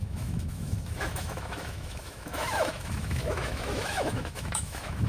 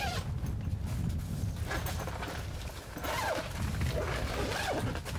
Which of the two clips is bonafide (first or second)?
second